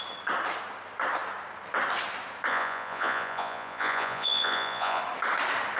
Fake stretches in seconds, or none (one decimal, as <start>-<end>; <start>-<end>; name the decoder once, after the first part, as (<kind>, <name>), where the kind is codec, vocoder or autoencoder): 2.5-5.0 (vocoder, Vocos)